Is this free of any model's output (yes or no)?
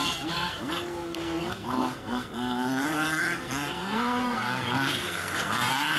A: no